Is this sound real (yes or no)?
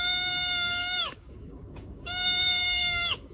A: no